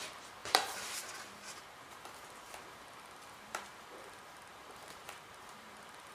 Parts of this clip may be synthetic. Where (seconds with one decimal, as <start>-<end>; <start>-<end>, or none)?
0.4-4.1; 4.5-6.1